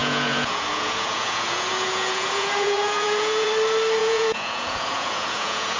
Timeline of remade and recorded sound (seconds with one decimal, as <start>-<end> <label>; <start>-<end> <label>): 0.0-3.5 remade; 3.5-4.0 recorded; 4.0-5.8 remade